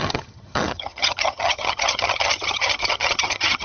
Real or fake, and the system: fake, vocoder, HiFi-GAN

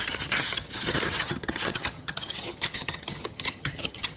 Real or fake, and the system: fake, vocoder, HiFi-GAN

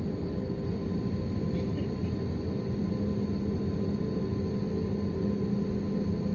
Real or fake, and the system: real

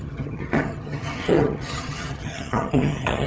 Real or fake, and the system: fake, vocoder, HiFi-GAN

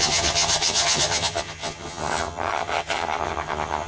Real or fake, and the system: fake, vocoder, HiFi-GAN